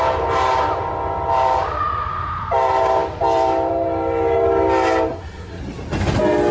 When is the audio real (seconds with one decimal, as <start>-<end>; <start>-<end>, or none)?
0.0-5.1; 5.6-6.5